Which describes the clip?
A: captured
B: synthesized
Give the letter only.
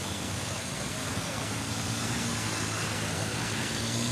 B